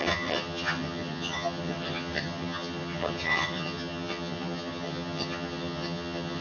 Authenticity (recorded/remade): remade